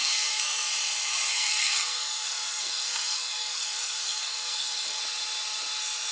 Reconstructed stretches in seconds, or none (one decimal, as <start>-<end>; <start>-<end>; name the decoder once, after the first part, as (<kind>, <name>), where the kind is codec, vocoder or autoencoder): 0.0-0.7 (codec, SNAC); 1.3-5.0